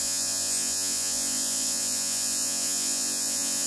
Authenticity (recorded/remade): remade